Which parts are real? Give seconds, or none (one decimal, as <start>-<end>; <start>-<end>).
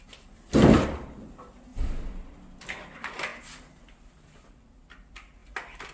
0.0-3.3; 3.8-5.9